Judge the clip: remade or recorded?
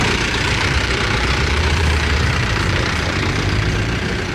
remade